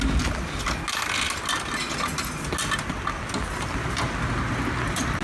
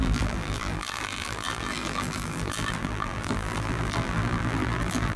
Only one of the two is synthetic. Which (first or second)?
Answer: second